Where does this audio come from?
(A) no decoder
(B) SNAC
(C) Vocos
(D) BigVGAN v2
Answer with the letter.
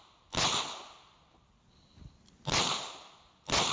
A